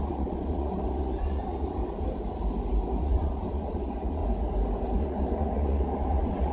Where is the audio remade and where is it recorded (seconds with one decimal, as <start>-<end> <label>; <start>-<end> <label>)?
0.0-1.8 remade; 1.8-3.0 recorded; 3.0-4.2 remade; 4.2-5.0 recorded; 5.0-6.5 remade